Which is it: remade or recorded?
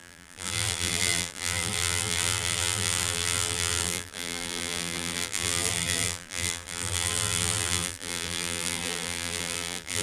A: remade